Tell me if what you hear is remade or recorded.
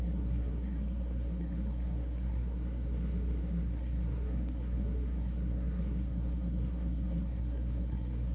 remade